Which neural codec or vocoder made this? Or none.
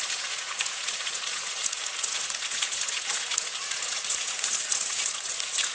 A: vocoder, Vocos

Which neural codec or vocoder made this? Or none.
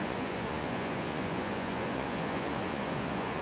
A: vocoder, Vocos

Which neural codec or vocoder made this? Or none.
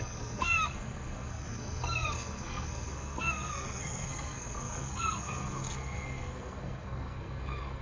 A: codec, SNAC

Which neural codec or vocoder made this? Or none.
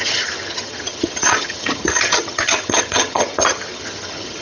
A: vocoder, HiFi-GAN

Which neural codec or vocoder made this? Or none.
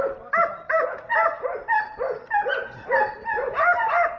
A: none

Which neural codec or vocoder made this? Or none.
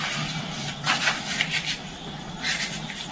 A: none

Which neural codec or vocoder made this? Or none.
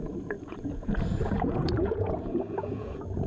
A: vocoder, Vocos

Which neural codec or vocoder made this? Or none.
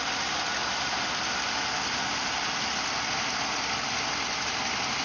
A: none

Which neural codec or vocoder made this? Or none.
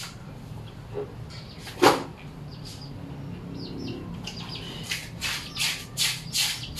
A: none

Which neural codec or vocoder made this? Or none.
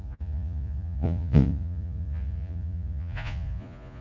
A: vocoder, Vocos